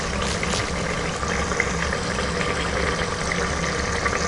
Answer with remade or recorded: recorded